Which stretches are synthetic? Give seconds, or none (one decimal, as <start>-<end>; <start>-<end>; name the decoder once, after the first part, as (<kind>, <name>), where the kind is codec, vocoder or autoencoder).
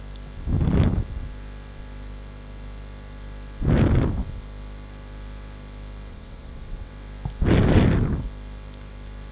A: 6.1-6.9 (vocoder, WaveNeXt)